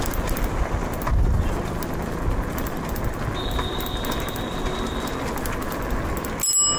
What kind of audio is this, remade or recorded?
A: recorded